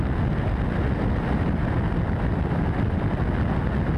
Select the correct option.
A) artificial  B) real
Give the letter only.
B